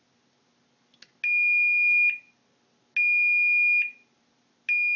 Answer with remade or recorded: recorded